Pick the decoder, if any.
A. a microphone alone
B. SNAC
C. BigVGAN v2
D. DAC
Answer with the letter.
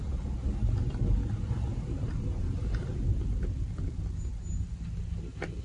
A